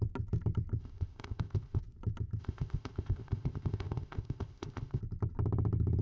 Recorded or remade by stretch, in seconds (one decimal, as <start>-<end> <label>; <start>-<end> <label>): 0.0-0.8 recorded; 0.8-1.8 remade; 1.8-2.4 recorded; 2.4-5.0 remade; 5.0-6.0 recorded